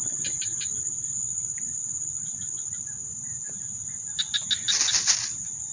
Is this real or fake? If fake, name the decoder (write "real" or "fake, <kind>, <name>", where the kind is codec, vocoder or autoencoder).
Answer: real